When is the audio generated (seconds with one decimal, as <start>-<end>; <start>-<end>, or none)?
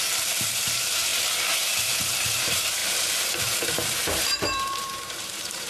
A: 0.0-5.7